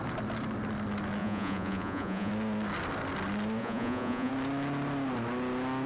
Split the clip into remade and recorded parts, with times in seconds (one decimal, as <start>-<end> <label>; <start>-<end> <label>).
0.0-1.2 recorded; 1.2-2.3 remade; 2.3-3.6 recorded; 3.6-4.3 remade; 4.3-5.9 recorded